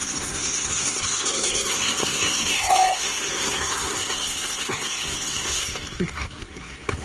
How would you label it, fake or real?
fake